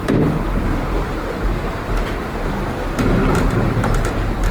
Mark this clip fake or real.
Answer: real